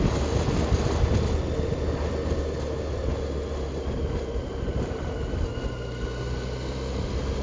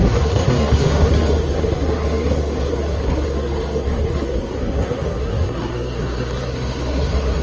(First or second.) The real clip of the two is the first